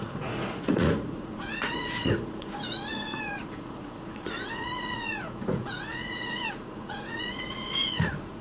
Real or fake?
fake